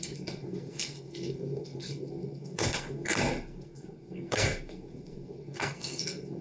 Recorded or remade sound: remade